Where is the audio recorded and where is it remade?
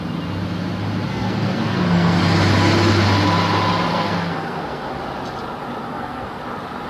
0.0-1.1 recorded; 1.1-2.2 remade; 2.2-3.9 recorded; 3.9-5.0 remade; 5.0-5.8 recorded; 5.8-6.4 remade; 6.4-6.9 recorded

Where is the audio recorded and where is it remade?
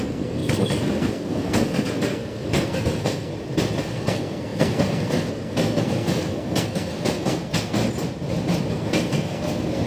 0.0-3.3 remade; 3.3-3.8 recorded; 3.8-7.8 remade; 7.8-8.7 recorded; 8.7-9.9 remade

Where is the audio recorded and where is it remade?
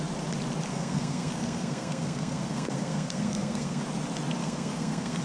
0.0-0.7 recorded; 0.7-3.8 remade; 3.8-4.4 recorded; 4.4-5.2 remade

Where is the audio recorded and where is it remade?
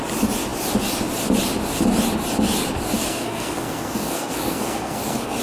0.0-3.0 recorded; 3.0-5.4 remade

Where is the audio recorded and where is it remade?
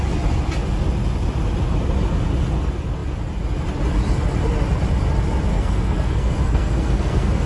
0.0-5.5 recorded; 5.5-7.5 remade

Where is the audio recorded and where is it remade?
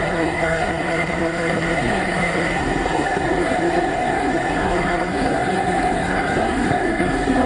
0.0-7.5 remade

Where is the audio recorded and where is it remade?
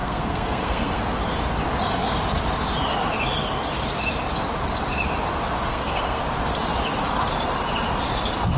0.0-1.0 remade; 1.0-5.7 recorded; 5.7-6.2 remade; 6.2-8.6 recorded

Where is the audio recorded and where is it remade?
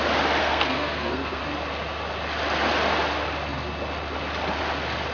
0.0-0.4 recorded; 0.4-1.4 remade; 1.4-5.1 recorded